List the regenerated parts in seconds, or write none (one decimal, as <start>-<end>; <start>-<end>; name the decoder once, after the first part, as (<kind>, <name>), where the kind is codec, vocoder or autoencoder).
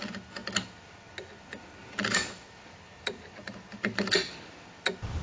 none